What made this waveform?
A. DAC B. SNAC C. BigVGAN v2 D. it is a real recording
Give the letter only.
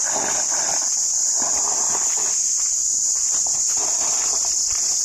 D